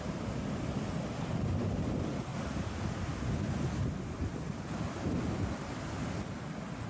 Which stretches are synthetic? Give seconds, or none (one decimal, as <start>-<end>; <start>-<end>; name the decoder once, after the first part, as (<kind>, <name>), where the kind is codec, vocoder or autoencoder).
none